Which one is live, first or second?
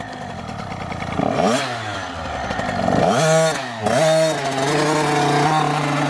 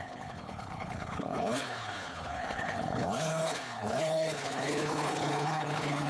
first